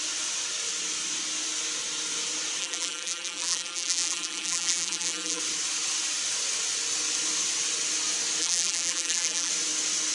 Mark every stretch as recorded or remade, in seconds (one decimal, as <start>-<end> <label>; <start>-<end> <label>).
0.0-2.6 recorded; 2.6-5.4 remade; 5.4-8.4 recorded; 8.4-9.5 remade; 9.5-10.1 recorded